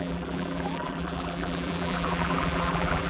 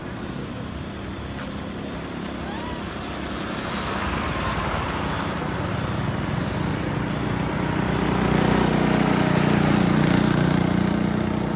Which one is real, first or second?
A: second